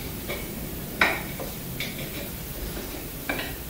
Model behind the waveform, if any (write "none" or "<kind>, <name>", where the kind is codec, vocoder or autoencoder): vocoder, BigVGAN v2